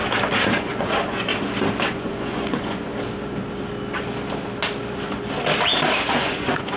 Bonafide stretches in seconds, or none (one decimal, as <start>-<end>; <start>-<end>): 0.0-0.6; 1.3-1.9; 2.9-6.2